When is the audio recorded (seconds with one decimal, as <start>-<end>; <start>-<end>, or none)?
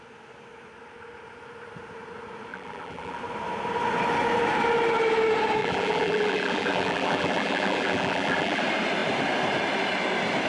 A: 0.0-2.5; 3.2-5.6; 8.6-10.5